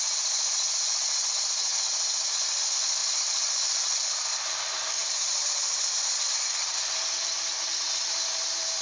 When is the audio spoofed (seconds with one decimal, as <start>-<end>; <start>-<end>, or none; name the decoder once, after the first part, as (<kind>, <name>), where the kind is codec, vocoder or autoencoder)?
3.0-7.4 (vocoder, BigVGAN v2)